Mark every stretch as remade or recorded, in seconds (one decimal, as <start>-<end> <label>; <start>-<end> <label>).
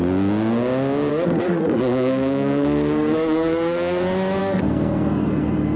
0.0-1.1 recorded; 1.1-4.0 remade; 4.0-4.4 recorded; 4.4-5.8 remade